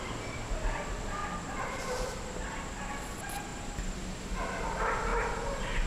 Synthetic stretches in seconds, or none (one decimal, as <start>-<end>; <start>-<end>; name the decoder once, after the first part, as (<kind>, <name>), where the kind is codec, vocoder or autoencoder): 1.2-2.2 (vocoder, BigVGAN v2)